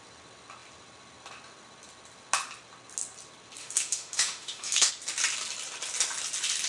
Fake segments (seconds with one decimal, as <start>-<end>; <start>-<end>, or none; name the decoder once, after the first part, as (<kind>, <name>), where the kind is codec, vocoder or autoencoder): 3.6-4.9 (autoencoder, DAC-VAE)